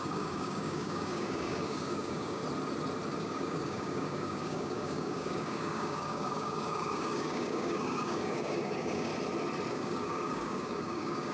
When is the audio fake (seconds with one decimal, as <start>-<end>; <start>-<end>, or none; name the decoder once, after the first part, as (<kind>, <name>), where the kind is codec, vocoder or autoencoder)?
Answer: 0.0-2.4 (codec, DAC); 3.2-9.1; 9.7-11.3